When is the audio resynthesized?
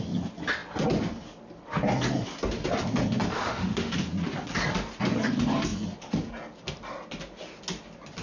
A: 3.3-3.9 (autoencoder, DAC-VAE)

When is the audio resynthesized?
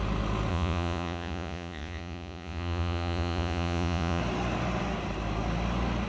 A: 0.5-4.2 (vocoder, Vocos)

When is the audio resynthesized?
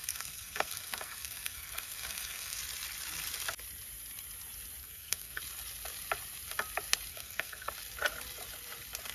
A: 0.0-2.6 (codec, SNAC); 4.8-5.4; 7.1-7.7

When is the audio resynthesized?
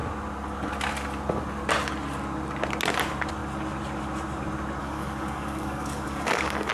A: 4.8-6.7 (codec, DAC)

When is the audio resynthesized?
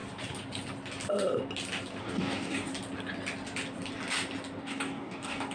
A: 2.0-2.7 (codec, DAC); 4.6-5.5